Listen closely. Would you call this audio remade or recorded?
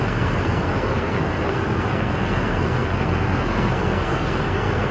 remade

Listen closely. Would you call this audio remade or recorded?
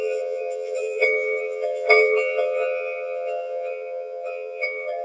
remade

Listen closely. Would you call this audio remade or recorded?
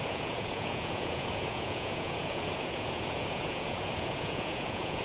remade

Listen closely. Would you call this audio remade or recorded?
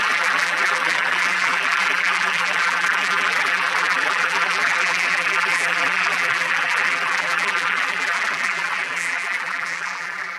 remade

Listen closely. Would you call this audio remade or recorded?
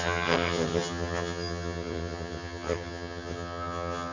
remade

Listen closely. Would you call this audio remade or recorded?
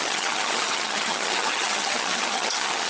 remade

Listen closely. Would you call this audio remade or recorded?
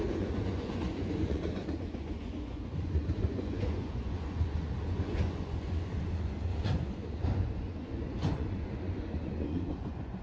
remade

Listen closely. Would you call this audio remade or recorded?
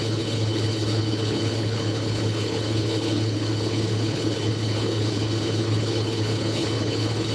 remade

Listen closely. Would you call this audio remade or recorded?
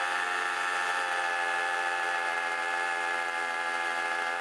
recorded